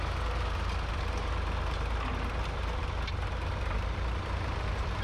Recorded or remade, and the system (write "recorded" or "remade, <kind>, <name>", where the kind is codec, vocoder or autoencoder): recorded